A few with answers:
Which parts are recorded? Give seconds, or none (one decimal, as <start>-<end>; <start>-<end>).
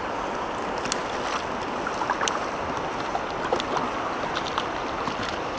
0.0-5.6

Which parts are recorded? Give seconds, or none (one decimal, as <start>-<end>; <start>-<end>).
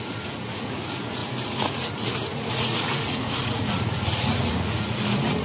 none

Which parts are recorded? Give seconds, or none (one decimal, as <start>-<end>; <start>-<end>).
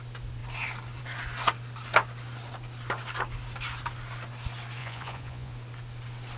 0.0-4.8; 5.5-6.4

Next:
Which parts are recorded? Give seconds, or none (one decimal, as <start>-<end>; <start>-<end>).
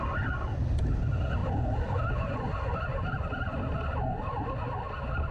0.0-5.3